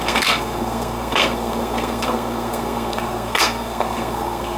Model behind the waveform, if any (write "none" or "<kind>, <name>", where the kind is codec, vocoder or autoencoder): codec, SNAC